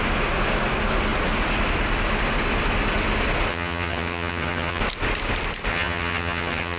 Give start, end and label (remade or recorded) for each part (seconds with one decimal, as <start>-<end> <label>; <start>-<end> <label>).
0.0-3.5 recorded; 3.5-4.8 remade; 4.8-5.7 recorded; 5.7-6.8 remade